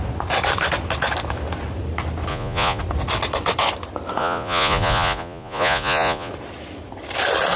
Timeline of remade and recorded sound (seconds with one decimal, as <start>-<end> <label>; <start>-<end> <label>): 0.0-2.3 recorded; 2.3-2.8 remade; 2.8-4.2 recorded; 4.2-6.3 remade; 6.3-7.6 recorded